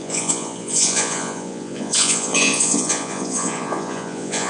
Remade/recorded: remade